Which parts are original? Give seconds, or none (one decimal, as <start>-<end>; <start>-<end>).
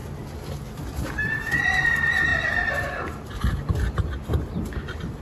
0.0-5.2